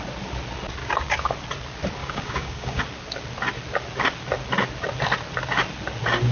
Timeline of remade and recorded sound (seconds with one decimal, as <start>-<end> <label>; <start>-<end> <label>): 0.0-0.8 recorded; 0.8-1.3 remade; 1.3-2.0 recorded; 2.0-2.8 remade; 2.8-6.3 recorded